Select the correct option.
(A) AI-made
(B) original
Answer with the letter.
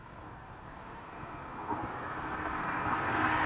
A